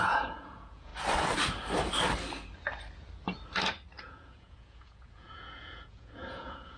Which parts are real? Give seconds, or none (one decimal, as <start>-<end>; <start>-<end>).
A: 0.9-4.0